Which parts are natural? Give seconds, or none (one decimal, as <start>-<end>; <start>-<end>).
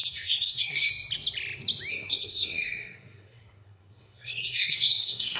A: 0.9-1.9